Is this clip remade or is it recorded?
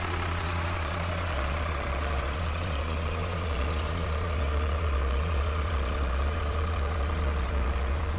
remade